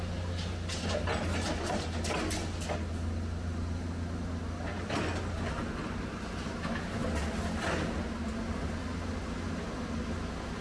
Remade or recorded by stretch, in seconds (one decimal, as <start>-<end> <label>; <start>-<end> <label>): 0.0-10.6 recorded